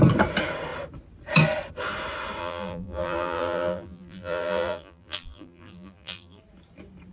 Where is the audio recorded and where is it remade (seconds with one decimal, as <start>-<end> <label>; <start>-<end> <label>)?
0.0-2.4 recorded; 2.4-6.4 remade; 6.4-7.1 recorded